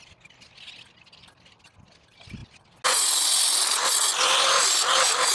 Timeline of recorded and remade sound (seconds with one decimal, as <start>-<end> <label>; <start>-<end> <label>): 0.0-5.3 recorded